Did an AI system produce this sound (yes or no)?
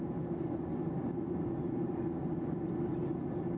no